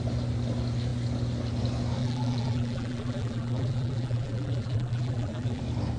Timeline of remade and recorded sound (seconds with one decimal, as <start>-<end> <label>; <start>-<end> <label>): 0.0-2.0 recorded; 2.0-5.6 remade; 5.6-6.0 recorded